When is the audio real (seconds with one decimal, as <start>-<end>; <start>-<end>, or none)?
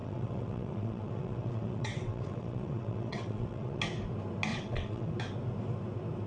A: 3.8-4.5; 5.1-6.3